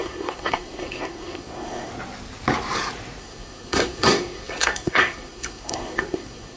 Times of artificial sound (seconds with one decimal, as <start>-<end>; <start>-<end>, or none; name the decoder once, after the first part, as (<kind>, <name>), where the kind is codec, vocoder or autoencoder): 0.0-1.9 (codec, SNAC); 3.2-6.6